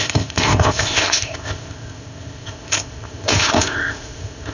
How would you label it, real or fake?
fake